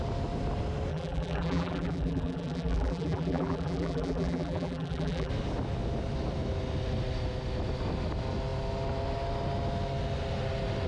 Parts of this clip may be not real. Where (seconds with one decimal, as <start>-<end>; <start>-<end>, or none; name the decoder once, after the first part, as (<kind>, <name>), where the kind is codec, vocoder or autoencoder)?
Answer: 0.9-5.3 (vocoder, BigVGAN v2)